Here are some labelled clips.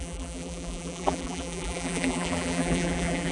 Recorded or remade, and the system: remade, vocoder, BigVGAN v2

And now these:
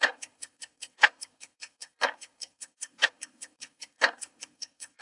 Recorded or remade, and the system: remade, codec, SNAC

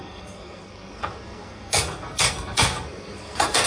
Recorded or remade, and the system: remade, codec, SNAC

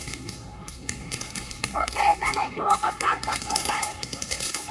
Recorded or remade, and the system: remade, codec, SNAC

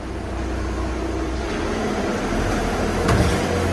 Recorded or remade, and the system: recorded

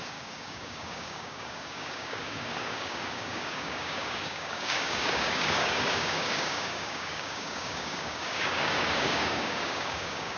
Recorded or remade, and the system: remade, codec, DAC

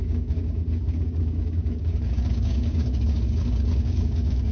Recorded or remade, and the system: remade, codec, DAC